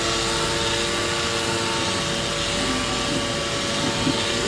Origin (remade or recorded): recorded